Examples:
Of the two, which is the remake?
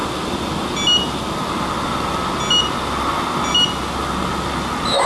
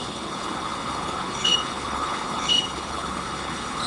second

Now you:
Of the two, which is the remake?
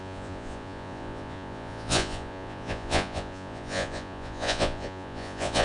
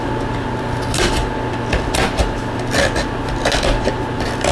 first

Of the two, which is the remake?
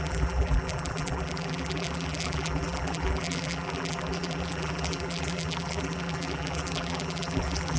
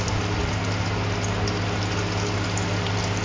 first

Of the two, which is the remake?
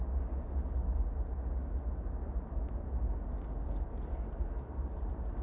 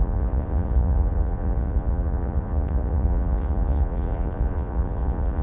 second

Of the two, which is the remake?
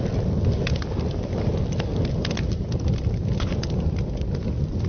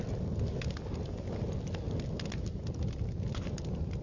first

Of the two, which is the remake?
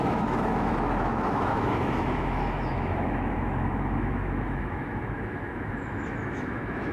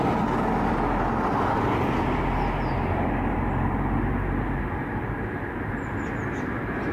first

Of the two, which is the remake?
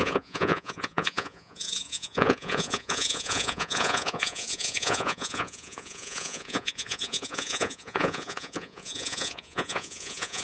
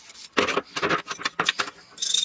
first